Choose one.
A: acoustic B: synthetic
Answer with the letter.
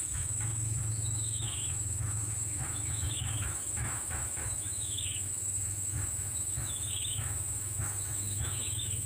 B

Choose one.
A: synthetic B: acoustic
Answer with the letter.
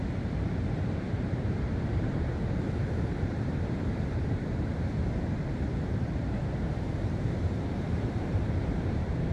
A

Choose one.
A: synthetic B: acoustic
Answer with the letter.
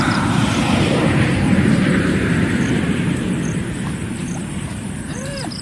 A